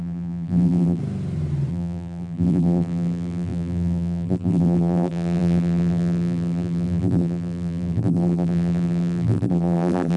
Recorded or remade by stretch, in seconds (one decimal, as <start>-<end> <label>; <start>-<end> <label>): 0.0-1.0 remade; 1.0-1.7 recorded; 1.7-10.2 remade